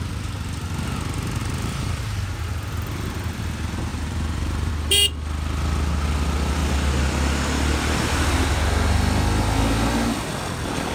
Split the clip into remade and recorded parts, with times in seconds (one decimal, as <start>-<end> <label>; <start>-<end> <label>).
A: 0.0-1.4 recorded; 1.4-2.0 remade; 2.0-3.9 recorded; 3.9-4.7 remade; 4.7-10.9 recorded